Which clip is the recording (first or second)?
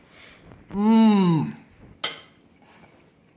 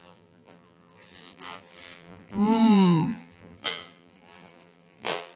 first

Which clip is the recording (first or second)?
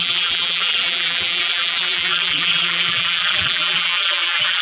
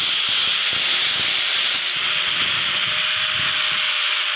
second